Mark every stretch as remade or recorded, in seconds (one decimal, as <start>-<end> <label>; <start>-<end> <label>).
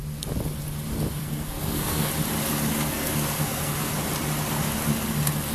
0.0-1.2 recorded; 1.2-2.1 remade; 2.1-2.7 recorded; 2.7-3.9 remade; 3.9-5.5 recorded